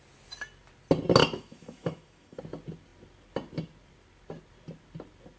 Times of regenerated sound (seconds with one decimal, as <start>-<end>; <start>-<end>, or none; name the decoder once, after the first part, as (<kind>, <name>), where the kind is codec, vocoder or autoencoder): 1.2-2.4 (autoencoder, DAC-VAE)